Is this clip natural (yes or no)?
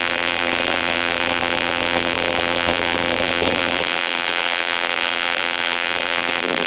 no